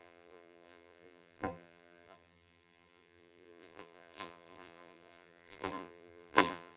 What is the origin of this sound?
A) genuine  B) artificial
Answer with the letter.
B